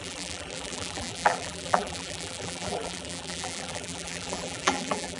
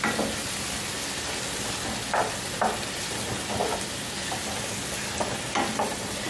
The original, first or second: second